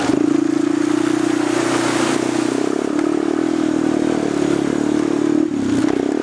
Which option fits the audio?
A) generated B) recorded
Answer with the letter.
B